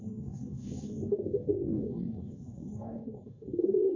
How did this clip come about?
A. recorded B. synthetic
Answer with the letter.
B